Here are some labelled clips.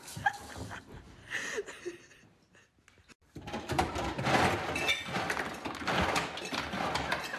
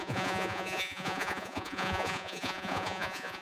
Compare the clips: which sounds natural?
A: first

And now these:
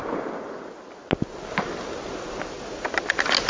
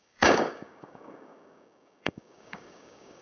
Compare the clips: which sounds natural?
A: first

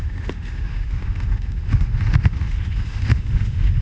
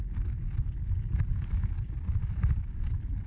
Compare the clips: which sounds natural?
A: second